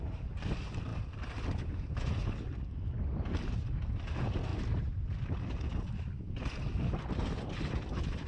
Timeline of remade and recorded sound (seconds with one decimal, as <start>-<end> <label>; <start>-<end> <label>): 0.0-8.3 recorded